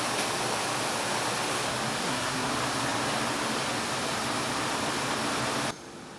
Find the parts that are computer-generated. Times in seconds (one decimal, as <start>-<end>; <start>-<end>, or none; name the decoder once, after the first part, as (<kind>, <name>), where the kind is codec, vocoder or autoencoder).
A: 2.0-2.5 (codec, SNAC)